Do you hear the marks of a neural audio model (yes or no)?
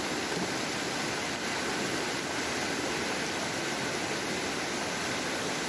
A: no